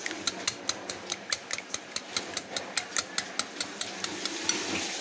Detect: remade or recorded recorded